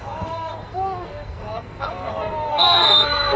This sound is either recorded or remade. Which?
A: remade